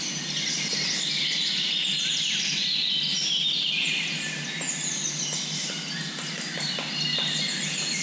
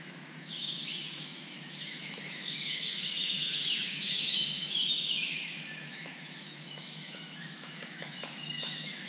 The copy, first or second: second